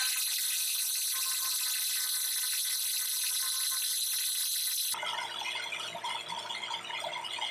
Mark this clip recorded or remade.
recorded